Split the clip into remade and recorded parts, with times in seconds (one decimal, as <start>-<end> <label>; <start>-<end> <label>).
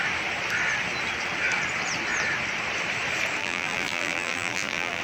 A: 0.0-3.4 recorded; 3.4-5.0 remade